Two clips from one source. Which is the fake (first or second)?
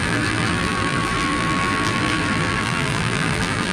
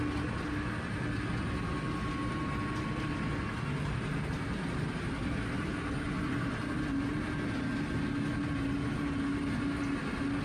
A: first